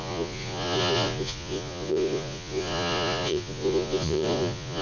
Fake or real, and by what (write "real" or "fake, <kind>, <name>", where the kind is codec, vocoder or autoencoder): fake, vocoder, Vocos